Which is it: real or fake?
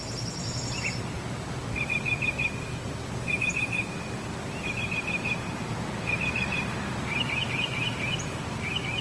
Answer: real